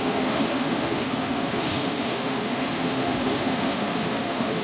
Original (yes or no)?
no